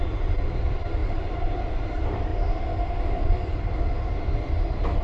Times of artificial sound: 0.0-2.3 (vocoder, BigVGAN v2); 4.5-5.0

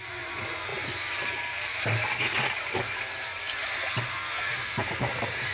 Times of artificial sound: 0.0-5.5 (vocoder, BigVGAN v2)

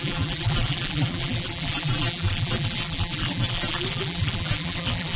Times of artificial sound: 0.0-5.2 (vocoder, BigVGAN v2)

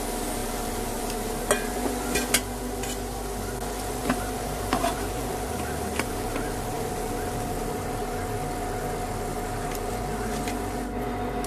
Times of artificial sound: 0.4-1.0 (vocoder, BigVGAN v2); 4.0-8.0

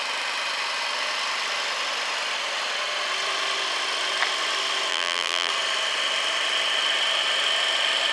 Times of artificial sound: 4.9-5.5 (vocoder, BigVGAN v2)

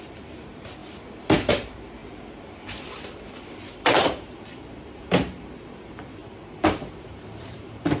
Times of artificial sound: 0.0-0.8 (vocoder, BigVGAN v2); 1.5-2.0; 3.9-6.2; 6.8-8.0